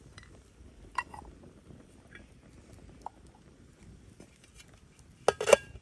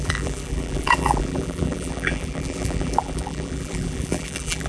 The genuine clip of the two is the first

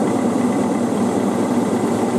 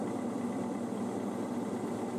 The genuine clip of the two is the second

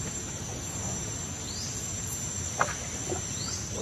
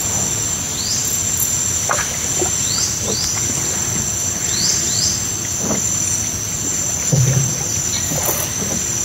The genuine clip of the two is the second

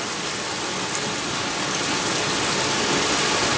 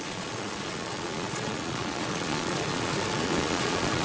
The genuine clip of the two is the first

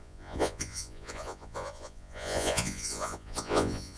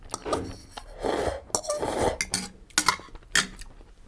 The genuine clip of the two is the second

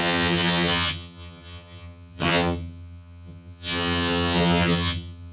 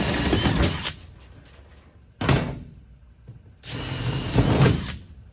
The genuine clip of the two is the second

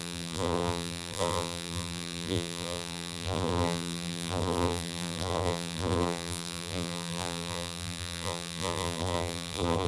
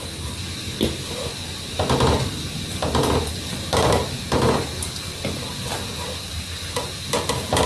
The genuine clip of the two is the second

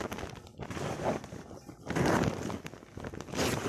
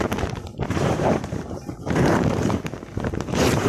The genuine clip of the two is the first